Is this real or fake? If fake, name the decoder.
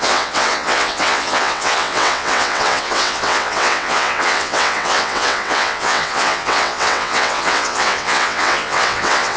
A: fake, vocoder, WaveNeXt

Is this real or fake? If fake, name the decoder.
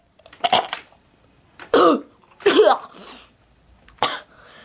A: real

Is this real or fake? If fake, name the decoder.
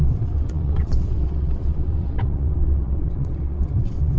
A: fake, vocoder, WaveNeXt